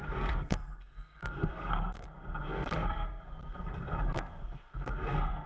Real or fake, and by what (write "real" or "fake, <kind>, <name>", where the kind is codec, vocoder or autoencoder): fake, codec, SNAC